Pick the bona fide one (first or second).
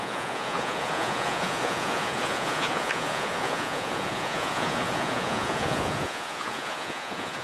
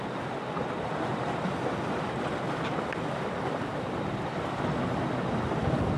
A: second